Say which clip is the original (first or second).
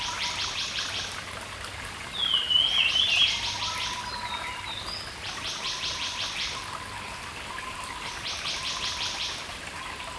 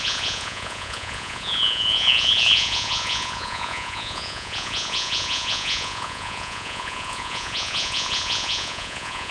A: first